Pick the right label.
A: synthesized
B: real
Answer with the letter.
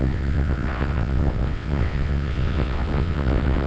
A